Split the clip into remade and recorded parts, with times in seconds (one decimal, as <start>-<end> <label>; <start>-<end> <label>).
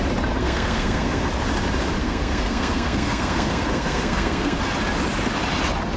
0.0-0.4 recorded; 0.4-1.3 remade; 1.3-2.0 recorded; 2.0-4.6 remade; 4.6-6.0 recorded